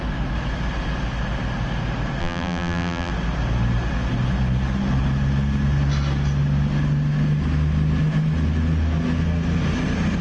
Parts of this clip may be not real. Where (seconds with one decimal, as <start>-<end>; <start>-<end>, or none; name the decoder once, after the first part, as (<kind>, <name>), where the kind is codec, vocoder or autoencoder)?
2.2-3.1 (vocoder, BigVGAN v2)